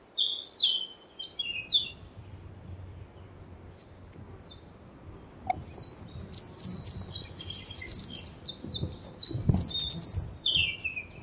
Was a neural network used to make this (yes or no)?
no